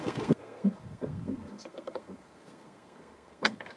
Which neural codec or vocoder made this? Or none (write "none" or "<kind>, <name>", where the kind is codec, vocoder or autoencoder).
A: codec, SNAC